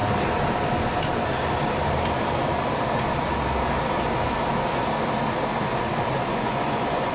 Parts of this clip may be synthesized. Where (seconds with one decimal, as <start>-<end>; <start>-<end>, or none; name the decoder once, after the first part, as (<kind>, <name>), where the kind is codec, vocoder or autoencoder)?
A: 6.3-7.1 (vocoder, Vocos)